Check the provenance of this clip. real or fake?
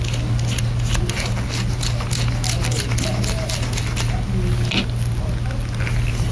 real